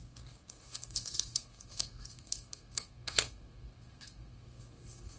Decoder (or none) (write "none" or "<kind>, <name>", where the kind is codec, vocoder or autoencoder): codec, SNAC